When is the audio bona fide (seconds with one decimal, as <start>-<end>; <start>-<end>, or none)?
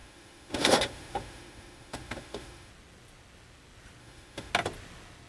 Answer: 2.7-4.0; 4.5-5.3